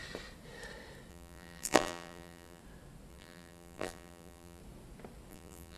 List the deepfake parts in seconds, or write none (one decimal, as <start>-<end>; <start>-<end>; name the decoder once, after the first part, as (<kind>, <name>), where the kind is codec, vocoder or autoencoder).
1.1-2.6 (vocoder, BigVGAN v2); 3.1-4.6; 5.3-5.8